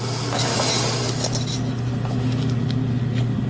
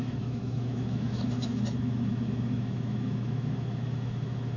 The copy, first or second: second